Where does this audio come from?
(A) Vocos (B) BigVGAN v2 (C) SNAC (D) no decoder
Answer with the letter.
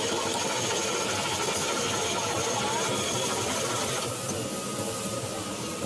D